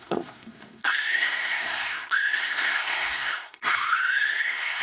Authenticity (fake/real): fake